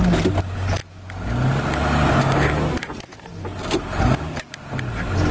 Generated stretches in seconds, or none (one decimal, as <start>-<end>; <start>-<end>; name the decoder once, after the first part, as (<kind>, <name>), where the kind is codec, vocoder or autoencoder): none